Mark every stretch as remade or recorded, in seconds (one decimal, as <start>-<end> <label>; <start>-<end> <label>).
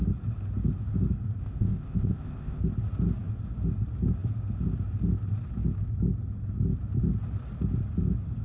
0.0-1.4 recorded; 1.4-2.6 remade; 2.6-8.4 recorded